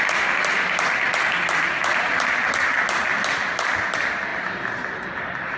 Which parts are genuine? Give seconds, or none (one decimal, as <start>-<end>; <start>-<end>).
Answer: 0.0-5.6